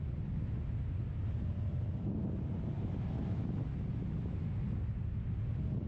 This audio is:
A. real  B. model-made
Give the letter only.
A